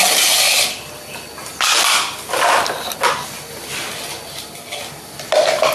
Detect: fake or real real